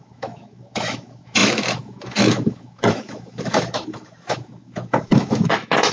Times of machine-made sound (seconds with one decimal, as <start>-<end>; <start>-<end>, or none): 0.0-5.9